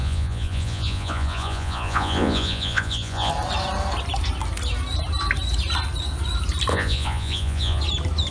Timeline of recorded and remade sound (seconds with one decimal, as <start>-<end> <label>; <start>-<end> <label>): 0.0-3.3 remade; 3.3-6.7 recorded; 6.7-7.8 remade; 7.8-8.3 recorded